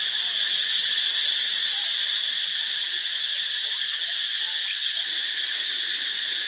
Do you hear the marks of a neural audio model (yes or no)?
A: no